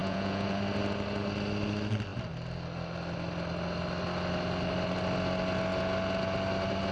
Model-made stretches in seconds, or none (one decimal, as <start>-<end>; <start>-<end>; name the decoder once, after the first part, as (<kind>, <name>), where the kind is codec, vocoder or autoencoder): 0.0-0.6 (vocoder, Vocos)